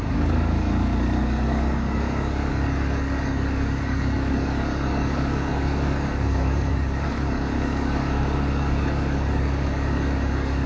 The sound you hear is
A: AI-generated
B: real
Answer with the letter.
A